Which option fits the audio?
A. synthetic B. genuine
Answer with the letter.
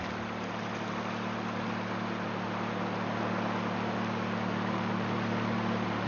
B